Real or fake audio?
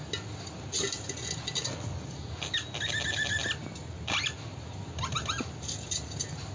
real